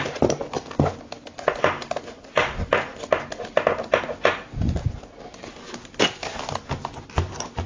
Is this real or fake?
real